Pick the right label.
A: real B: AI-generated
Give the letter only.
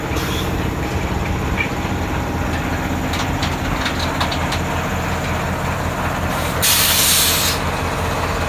A